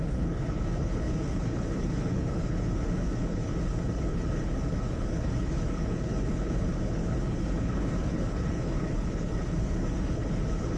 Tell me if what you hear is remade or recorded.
remade